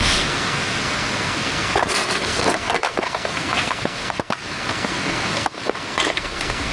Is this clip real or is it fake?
fake